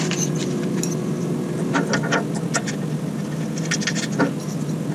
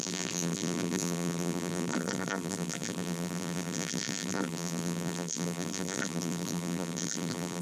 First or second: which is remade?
second